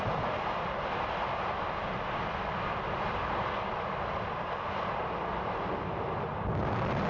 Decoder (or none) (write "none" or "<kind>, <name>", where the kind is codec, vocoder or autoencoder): none